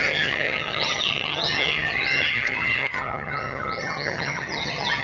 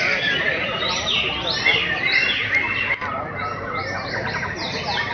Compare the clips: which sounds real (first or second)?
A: second